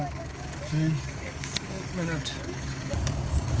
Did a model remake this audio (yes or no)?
yes